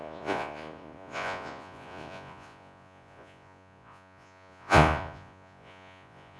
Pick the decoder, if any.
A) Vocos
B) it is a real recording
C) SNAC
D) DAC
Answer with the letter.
A